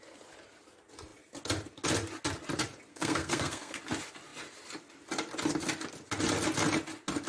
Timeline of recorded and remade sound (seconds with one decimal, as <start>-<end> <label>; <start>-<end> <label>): 0.0-2.9 recorded; 2.9-3.8 remade; 3.8-7.3 recorded